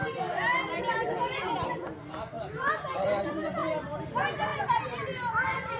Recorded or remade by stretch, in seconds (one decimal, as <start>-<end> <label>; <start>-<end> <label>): 0.0-0.5 recorded; 0.5-3.2 remade; 3.2-3.6 recorded; 3.6-4.1 remade; 4.1-4.5 recorded; 4.5-5.8 remade